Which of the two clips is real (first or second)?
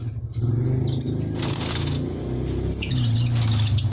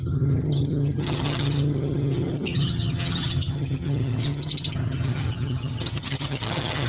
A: first